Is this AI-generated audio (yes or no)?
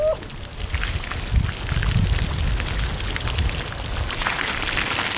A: no